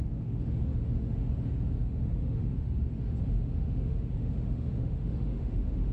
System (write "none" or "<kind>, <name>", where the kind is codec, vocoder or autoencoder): autoencoder, DAC-VAE